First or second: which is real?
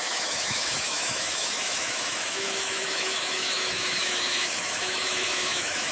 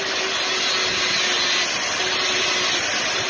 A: second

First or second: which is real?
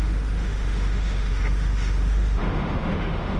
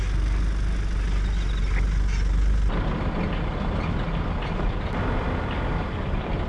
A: second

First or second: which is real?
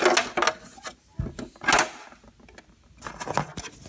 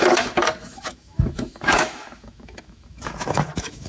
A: first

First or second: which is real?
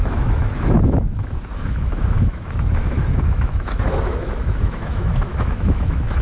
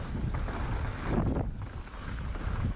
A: second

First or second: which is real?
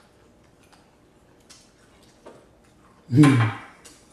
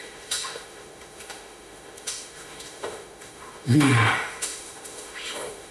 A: first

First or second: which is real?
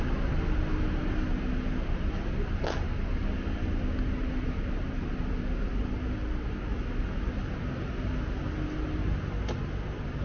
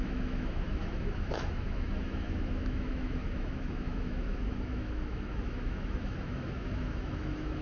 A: first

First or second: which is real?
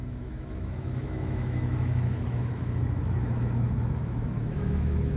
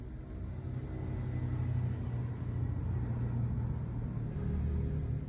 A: second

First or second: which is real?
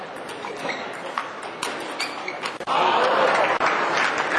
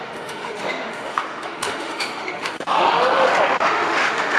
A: first